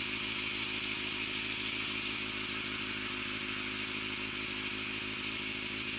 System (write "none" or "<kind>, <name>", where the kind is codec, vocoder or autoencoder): none